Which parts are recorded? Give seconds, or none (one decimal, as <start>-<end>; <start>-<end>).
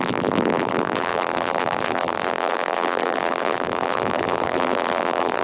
none